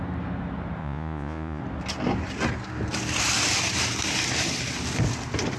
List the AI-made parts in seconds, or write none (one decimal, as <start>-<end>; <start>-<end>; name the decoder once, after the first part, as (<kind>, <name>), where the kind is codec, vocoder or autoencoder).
0.8-1.6 (vocoder, Vocos)